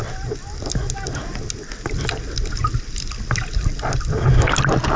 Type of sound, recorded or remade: recorded